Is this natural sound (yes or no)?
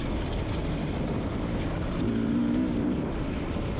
yes